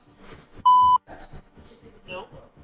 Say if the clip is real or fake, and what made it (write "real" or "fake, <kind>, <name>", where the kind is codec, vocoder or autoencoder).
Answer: fake, autoencoder, DAC-VAE